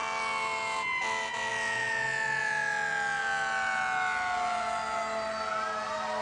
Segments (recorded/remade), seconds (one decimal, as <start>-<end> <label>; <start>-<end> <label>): 0.0-6.2 recorded